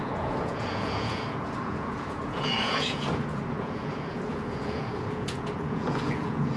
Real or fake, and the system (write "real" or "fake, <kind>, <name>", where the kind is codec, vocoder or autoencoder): fake, vocoder, Vocos